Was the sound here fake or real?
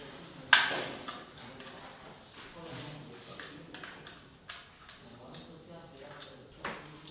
real